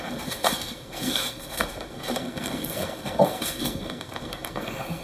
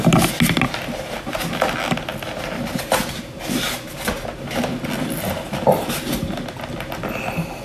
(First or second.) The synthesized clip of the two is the first